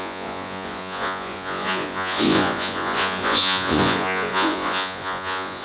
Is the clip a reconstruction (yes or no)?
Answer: yes